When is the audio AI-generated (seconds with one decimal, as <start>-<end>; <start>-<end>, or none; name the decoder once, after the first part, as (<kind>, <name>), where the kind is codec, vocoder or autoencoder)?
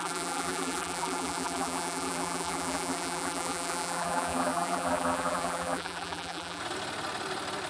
0.0-6.6 (vocoder, BigVGAN v2)